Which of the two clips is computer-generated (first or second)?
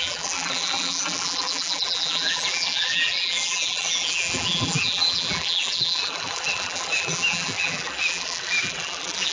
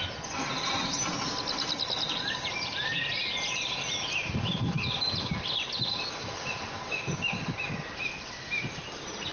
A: first